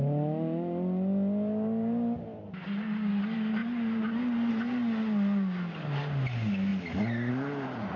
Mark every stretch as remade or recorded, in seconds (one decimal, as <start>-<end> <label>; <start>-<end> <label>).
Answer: 0.0-8.0 recorded